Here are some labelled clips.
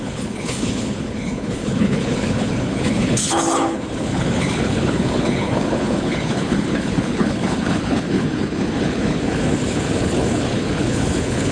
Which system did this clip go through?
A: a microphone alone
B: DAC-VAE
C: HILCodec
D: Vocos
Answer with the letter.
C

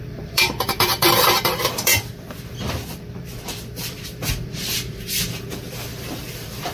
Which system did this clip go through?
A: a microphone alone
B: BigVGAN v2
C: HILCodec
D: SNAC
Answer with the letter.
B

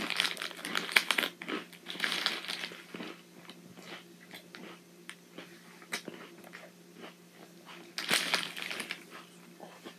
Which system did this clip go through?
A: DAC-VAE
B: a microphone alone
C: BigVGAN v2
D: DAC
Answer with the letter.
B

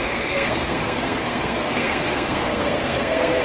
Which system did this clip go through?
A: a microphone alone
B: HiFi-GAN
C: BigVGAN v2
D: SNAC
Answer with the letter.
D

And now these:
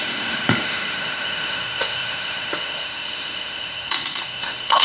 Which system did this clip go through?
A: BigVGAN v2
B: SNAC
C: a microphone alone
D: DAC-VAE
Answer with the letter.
D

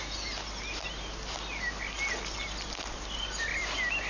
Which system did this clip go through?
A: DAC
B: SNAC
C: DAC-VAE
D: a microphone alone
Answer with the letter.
D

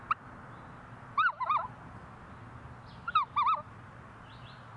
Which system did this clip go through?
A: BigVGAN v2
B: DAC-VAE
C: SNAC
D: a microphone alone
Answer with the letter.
D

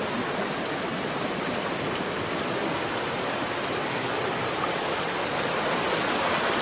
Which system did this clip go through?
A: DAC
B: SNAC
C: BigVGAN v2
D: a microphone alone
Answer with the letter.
D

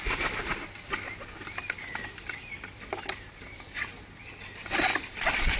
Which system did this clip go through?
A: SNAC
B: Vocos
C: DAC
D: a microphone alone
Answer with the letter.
D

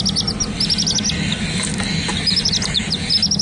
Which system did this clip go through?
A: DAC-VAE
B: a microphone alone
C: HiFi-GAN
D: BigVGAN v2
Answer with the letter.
B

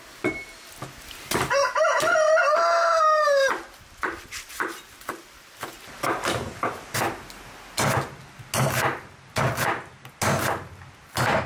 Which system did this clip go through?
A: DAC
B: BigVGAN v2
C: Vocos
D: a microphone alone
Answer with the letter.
D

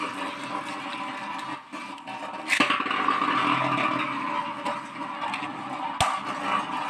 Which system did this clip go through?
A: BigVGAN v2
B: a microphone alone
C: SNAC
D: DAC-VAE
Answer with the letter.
B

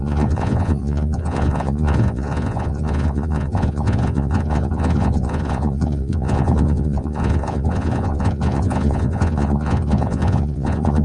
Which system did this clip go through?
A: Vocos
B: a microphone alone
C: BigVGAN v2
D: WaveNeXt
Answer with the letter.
A